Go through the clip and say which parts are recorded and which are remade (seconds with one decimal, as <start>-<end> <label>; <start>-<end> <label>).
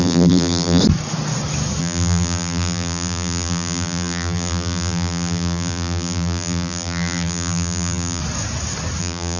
0.0-0.8 remade; 0.8-1.8 recorded; 1.8-8.2 remade; 8.2-9.0 recorded; 9.0-9.4 remade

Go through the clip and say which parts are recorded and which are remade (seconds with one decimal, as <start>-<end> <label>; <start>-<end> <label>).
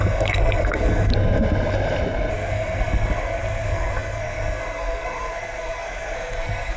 0.0-1.1 remade; 1.1-2.3 recorded; 2.3-6.8 remade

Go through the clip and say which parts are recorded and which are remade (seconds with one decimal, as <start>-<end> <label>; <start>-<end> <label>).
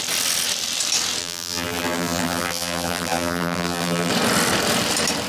0.0-1.2 recorded; 1.2-4.1 remade; 4.1-5.3 recorded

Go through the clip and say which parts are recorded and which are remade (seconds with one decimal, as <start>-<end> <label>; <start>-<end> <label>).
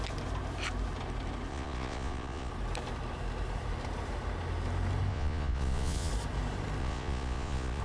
0.0-1.5 recorded; 1.5-2.5 remade; 2.5-5.1 recorded; 5.1-6.1 remade; 6.1-6.8 recorded; 6.8-7.8 remade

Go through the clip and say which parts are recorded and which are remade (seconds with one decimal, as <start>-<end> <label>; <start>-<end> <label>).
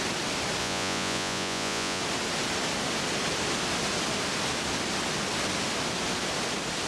0.0-0.6 recorded; 0.6-2.0 remade; 2.0-6.9 recorded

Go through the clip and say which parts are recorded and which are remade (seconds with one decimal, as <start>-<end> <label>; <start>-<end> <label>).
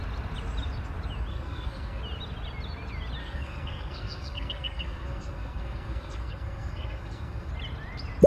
0.0-1.3 recorded; 1.3-2.0 remade; 2.0-3.2 recorded; 3.2-7.5 remade; 7.5-8.3 recorded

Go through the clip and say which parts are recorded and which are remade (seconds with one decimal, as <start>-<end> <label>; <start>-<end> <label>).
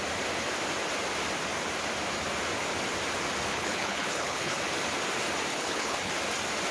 0.0-3.5 recorded; 3.5-4.6 remade; 4.6-5.5 recorded; 5.5-6.1 remade; 6.1-6.7 recorded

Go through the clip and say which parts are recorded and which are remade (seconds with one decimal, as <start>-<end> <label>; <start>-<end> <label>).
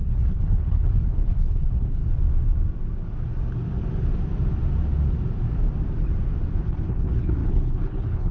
0.0-2.0 remade; 2.0-6.7 recorded; 6.7-8.3 remade